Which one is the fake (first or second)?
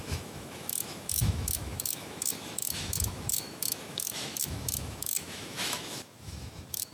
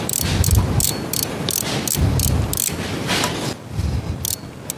first